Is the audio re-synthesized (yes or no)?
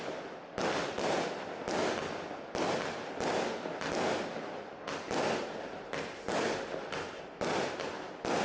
no